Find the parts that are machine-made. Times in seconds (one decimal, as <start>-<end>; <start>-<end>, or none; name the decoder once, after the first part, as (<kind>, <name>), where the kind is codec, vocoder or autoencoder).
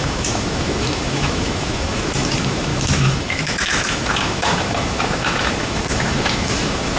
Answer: 0.0-7.0 (autoencoder, DAC-VAE)